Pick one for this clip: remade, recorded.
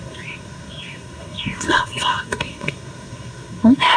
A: remade